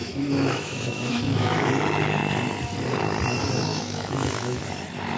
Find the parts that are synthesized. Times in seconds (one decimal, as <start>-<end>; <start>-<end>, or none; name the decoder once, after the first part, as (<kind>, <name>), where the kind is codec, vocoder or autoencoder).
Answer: 0.0-1.7 (autoencoder, DAC-VAE); 3.7-4.6